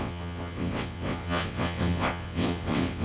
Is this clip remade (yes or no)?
yes